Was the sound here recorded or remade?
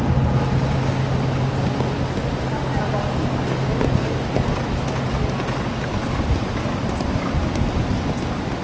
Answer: recorded